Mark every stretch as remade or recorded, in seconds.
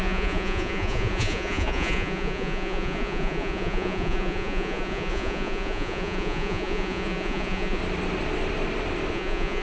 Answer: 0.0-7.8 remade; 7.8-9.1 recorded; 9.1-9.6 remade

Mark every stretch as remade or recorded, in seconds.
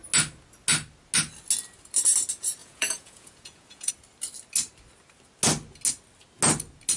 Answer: 0.0-2.6 recorded; 2.6-3.9 remade; 3.9-7.0 recorded